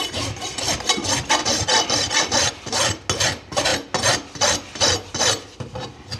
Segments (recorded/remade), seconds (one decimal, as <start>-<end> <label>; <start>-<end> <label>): 0.0-6.2 recorded